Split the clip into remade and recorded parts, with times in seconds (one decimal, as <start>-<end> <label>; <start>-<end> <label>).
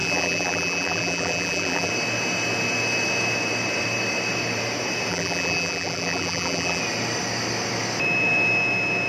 0.0-1.9 remade; 1.9-5.1 recorded; 5.1-6.8 remade; 6.8-9.1 recorded